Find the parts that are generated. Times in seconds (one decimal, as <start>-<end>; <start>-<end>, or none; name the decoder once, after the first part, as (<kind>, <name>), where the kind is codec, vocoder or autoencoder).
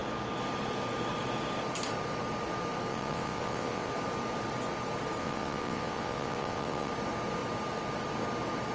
2.9-3.9 (vocoder, WaveNeXt); 5.2-6.9